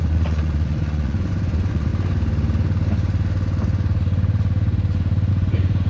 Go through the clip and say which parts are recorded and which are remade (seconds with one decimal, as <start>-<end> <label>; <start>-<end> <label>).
0.0-1.9 remade; 1.9-5.3 recorded; 5.3-5.9 remade

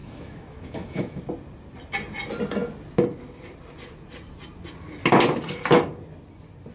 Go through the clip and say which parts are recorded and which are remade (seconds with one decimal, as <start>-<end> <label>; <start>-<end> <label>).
0.0-1.2 remade; 1.2-6.7 recorded

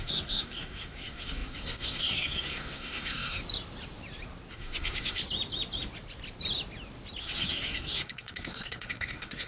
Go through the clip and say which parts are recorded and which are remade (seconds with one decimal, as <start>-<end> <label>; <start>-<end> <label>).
0.0-3.4 remade; 3.4-4.5 recorded; 4.5-5.2 remade; 5.2-7.2 recorded; 7.2-9.5 remade

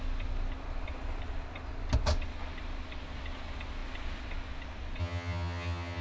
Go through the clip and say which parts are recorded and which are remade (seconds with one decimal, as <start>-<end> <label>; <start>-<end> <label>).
0.0-5.0 recorded; 5.0-6.0 remade

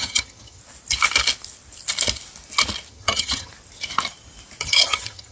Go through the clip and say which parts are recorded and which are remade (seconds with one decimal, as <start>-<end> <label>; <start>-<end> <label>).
0.0-0.6 remade; 0.6-2.9 recorded; 2.9-3.5 remade; 3.5-4.6 recorded; 4.6-5.3 remade

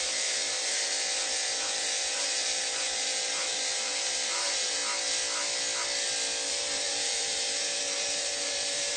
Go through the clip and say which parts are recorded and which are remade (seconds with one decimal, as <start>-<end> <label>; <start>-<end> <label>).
0.0-4.8 remade; 4.8-6.5 recorded; 6.5-9.0 remade

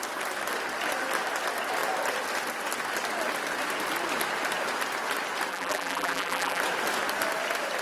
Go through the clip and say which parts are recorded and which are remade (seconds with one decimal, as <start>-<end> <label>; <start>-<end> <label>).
0.0-5.5 recorded; 5.5-6.6 remade; 6.6-7.8 recorded